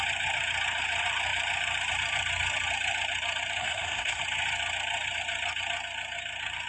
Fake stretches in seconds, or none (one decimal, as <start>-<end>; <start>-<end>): 3.6-4.2